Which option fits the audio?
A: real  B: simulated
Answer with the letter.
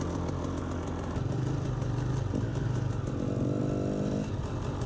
A